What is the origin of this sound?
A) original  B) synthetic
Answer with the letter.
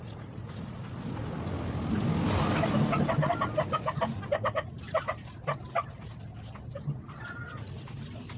A